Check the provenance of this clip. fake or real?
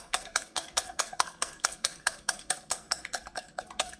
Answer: fake